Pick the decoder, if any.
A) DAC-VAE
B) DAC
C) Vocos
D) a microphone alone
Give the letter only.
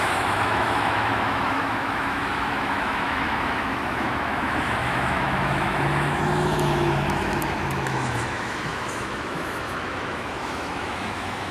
A